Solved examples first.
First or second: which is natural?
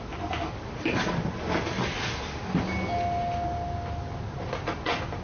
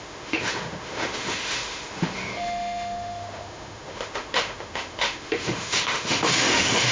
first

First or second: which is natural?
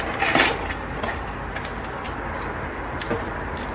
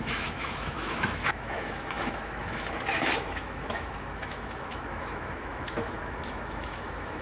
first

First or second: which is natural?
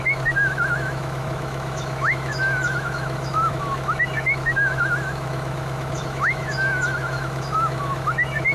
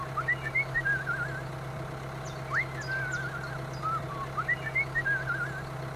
second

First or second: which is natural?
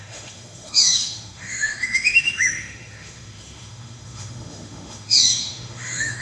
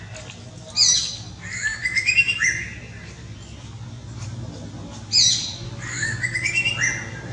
second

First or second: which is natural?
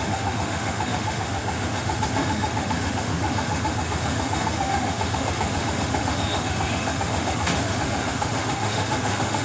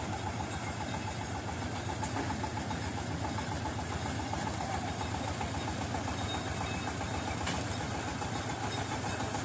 second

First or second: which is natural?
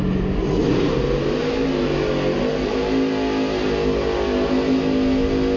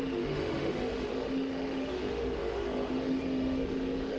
first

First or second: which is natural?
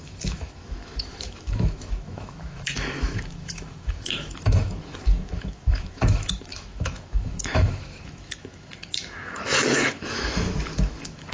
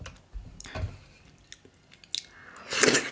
second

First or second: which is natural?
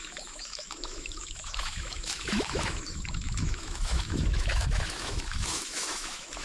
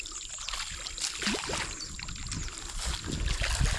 second